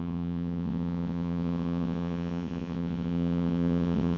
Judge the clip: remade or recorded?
remade